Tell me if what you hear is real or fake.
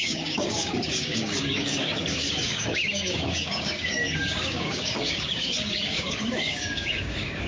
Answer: fake